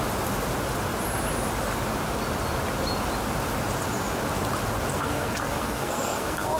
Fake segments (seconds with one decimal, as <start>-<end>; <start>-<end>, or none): 4.9-6.6